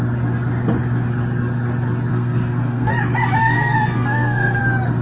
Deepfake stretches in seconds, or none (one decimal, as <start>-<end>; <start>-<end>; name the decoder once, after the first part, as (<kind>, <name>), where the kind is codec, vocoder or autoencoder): 2.1-2.9 (codec, SNAC); 3.4-4.6